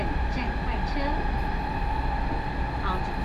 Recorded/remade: recorded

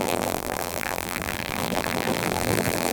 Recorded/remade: remade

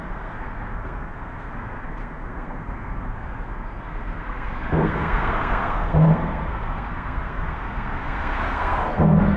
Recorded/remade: remade